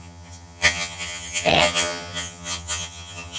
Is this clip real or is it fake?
fake